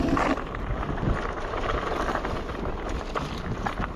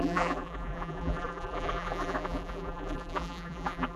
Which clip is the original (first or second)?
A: first